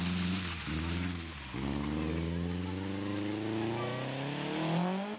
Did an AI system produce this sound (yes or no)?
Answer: no